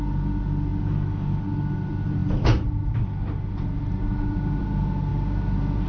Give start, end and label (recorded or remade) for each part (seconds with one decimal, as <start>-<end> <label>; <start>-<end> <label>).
0.0-5.9 recorded